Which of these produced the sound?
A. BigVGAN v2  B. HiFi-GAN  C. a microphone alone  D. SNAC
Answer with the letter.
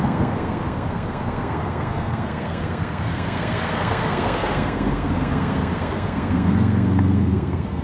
D